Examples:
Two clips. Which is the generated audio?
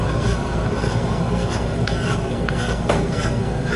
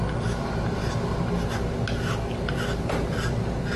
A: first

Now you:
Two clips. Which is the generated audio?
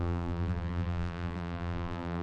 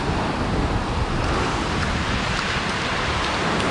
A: first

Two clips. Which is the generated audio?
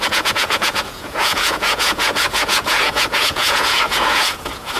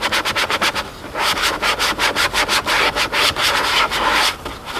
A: first